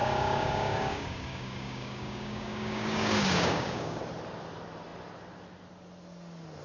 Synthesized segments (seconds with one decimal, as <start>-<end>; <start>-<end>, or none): 0.0-4.0